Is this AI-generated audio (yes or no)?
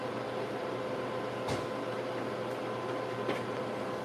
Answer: no